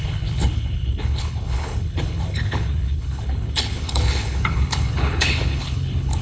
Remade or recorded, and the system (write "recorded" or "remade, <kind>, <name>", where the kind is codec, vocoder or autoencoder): remade, codec, HILCodec